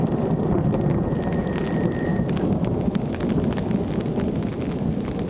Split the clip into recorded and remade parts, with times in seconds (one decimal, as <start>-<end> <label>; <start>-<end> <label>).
0.0-5.3 recorded